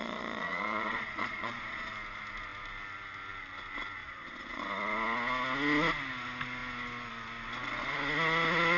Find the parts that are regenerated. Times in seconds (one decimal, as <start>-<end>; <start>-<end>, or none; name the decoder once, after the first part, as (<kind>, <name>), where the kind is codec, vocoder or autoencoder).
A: 0.0-1.9 (vocoder, Vocos); 4.0-4.6